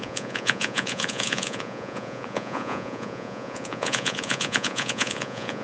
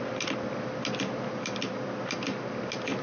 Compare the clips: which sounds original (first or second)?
second